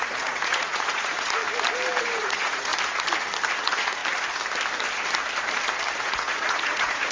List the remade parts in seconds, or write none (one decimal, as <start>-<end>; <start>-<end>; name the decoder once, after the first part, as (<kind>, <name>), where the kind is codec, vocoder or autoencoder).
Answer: 0.0-1.4 (vocoder, Vocos); 2.0-2.7; 3.6-4.0; 6.0-7.1